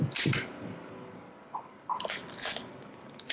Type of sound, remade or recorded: recorded